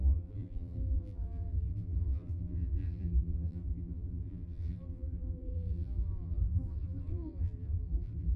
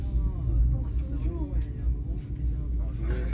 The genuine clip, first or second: second